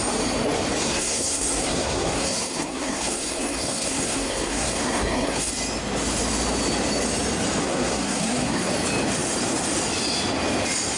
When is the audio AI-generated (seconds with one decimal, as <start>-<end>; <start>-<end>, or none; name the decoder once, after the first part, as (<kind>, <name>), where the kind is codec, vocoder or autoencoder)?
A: 0.8-5.5 (codec, SNAC); 7.6-8.7